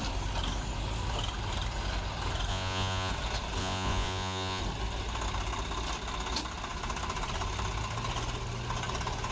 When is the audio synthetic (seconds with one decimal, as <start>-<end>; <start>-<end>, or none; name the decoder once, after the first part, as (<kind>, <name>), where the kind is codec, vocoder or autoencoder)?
2.5-3.1 (vocoder, Vocos); 3.6-4.6